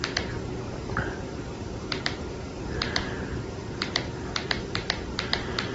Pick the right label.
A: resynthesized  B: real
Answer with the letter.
A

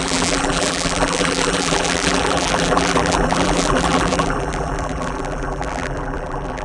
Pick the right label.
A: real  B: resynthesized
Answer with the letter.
B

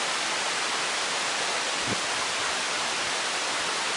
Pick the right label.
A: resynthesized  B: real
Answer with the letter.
B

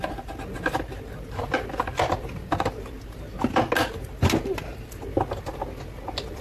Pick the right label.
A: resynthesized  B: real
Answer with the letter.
B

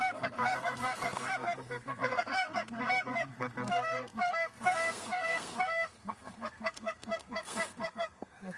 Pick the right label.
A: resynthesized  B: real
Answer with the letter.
A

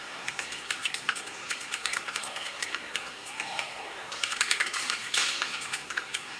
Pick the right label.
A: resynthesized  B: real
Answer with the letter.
A